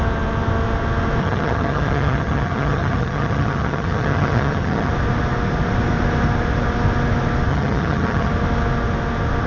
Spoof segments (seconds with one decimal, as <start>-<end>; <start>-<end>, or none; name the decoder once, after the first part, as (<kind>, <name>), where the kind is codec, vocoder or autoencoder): 1.2-4.9 (vocoder, HiFi-GAN); 7.5-8.3